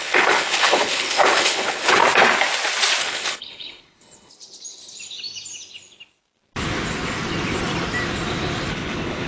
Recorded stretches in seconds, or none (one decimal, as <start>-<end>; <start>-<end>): 2.0-3.0; 4.3-8.7